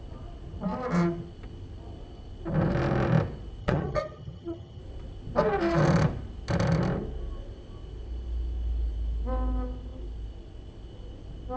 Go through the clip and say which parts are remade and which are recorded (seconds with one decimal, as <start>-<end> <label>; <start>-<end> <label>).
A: 0.0-3.6 recorded; 3.6-4.8 remade; 4.8-11.6 recorded